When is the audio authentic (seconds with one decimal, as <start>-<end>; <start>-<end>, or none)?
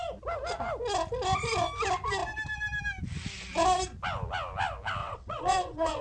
0.0-5.0